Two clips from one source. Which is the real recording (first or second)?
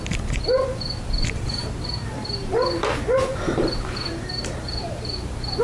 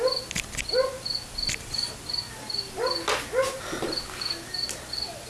second